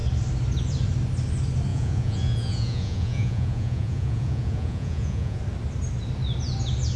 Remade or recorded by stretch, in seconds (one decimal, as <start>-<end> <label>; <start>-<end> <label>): 0.0-1.7 recorded; 1.7-5.4 remade; 5.4-7.0 recorded